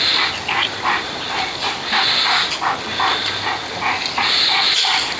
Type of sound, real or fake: real